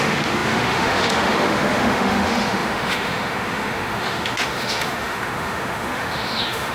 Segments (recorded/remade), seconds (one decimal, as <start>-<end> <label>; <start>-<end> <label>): 0.0-6.7 remade

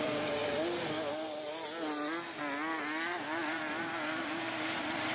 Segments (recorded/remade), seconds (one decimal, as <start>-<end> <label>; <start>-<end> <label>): 0.0-0.4 remade; 0.4-3.5 recorded; 3.5-5.1 remade

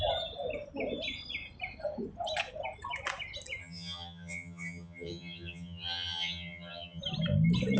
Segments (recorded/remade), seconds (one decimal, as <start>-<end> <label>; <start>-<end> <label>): 0.0-3.6 recorded; 3.6-7.0 remade; 7.0-7.8 recorded

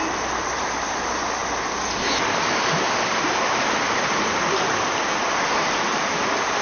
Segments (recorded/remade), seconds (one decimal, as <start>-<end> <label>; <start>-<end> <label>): 0.0-6.6 recorded

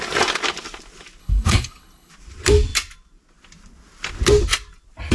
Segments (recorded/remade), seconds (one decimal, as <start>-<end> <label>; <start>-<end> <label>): 0.0-1.2 recorded; 1.2-2.1 remade; 2.1-5.1 recorded